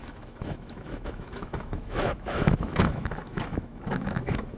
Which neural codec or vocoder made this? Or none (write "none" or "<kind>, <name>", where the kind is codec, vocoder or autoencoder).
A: autoencoder, DAC-VAE